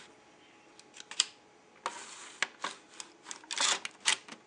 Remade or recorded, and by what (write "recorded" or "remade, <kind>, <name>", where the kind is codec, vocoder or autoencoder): recorded